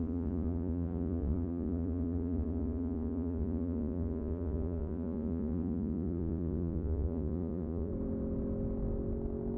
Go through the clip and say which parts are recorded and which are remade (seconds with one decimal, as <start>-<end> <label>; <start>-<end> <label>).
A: 0.0-7.9 remade; 7.9-9.6 recorded